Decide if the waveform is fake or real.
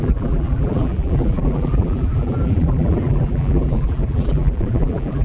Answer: fake